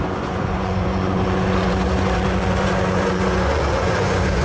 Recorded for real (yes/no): no